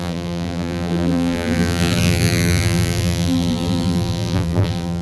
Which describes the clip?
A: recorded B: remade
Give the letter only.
B